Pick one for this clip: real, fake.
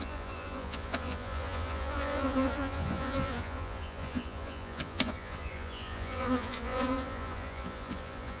fake